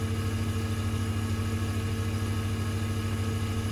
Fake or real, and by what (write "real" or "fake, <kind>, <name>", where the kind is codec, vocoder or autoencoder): real